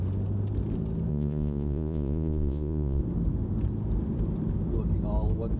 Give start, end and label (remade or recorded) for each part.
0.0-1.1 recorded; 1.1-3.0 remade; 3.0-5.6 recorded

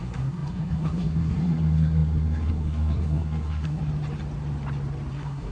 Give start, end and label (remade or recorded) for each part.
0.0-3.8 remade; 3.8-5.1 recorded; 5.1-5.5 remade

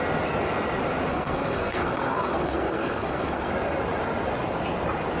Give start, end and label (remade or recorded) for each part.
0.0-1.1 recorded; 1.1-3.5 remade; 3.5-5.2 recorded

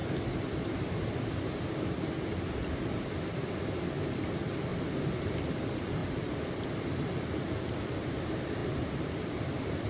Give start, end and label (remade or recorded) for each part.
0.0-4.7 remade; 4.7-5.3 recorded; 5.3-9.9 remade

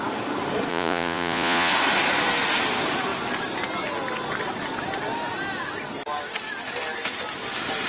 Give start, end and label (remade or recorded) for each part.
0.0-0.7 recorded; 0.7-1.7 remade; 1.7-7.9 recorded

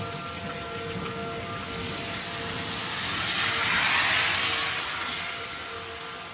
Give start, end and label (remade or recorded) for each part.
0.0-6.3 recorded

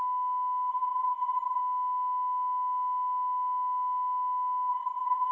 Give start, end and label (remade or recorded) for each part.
0.0-0.7 recorded; 0.7-1.6 remade; 1.6-4.7 recorded; 4.7-5.3 remade